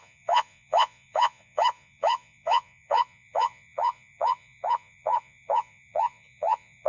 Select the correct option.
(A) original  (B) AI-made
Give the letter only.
B